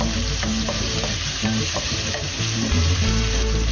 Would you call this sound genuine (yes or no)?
no